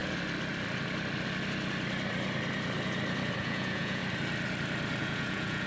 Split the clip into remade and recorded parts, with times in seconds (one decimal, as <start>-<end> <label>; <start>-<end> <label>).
0.0-3.4 recorded; 3.4-4.0 remade; 4.0-5.0 recorded; 5.0-5.7 remade